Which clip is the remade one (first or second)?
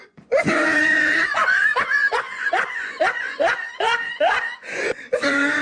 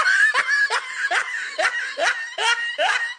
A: first